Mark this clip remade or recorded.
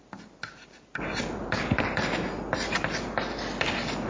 recorded